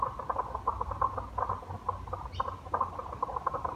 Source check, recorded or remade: recorded